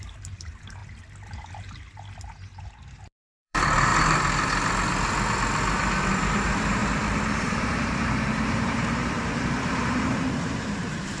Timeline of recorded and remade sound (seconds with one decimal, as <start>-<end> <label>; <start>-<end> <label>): 0.0-0.8 remade; 0.8-2.9 recorded; 2.9-3.9 remade; 3.9-6.1 recorded; 6.1-6.8 remade; 6.8-7.8 recorded; 7.8-11.2 remade